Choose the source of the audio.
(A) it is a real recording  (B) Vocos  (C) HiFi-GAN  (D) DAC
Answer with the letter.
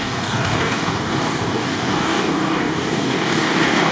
D